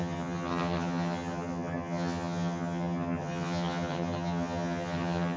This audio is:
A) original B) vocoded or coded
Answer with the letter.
B